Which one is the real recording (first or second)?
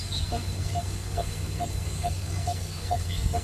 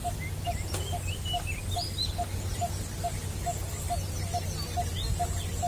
second